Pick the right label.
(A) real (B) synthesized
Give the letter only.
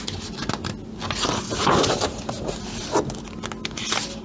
A